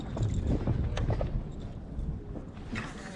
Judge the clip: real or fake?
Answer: real